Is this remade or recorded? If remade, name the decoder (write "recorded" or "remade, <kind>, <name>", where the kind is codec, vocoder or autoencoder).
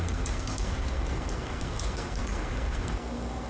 remade, codec, SNAC